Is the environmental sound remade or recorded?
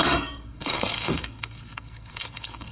remade